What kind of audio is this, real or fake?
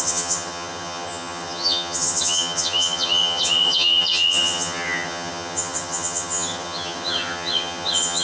fake